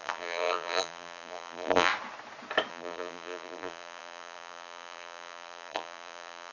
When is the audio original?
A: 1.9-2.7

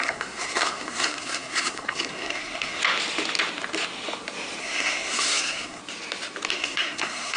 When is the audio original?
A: 2.8-4.6; 5.8-6.5